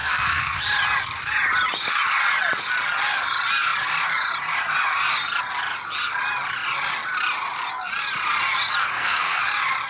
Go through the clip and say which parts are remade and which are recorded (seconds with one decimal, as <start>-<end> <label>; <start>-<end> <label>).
0.0-0.6 remade; 0.6-8.8 recorded; 8.8-9.4 remade; 9.4-9.9 recorded